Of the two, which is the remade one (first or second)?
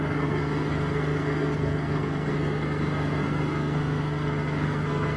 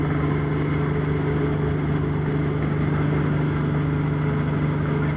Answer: first